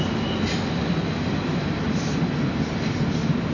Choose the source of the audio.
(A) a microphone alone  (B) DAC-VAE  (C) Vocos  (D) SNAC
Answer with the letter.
A